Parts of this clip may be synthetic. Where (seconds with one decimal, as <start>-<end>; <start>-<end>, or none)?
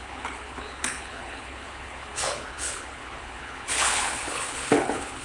0.0-5.2